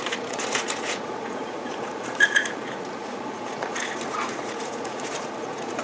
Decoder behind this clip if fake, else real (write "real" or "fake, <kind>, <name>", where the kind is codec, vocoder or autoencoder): fake, vocoder, Vocos